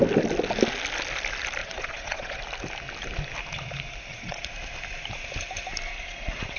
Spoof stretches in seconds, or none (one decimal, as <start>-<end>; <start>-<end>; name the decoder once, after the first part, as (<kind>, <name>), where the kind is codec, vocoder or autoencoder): 1.6-2.4 (vocoder, Vocos); 4.1-4.6; 5.9-6.6